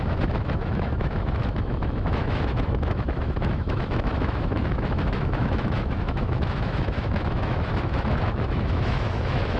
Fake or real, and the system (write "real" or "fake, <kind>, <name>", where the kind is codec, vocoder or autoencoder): fake, autoencoder, DAC-VAE